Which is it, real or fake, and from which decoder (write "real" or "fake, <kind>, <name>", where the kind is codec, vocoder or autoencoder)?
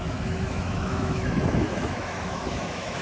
fake, autoencoder, DAC-VAE